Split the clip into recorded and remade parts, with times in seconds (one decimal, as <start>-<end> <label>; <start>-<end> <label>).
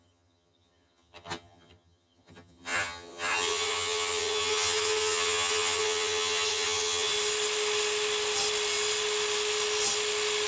0.0-7.1 remade; 7.1-10.5 recorded